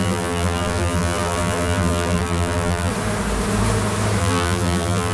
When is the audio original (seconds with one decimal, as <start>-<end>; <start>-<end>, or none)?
2.9-4.2